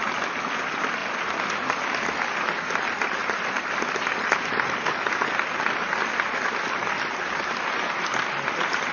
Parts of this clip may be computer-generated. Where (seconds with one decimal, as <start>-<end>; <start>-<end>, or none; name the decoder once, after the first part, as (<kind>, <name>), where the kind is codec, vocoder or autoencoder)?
none

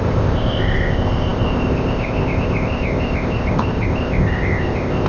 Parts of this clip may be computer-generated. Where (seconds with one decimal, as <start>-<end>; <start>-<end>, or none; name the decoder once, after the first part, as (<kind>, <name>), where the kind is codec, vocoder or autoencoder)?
0.0-5.1 (codec, ZipCodec)